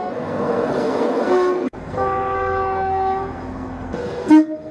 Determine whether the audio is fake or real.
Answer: fake